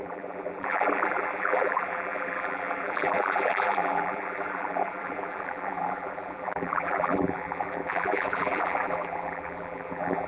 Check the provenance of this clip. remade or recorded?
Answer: remade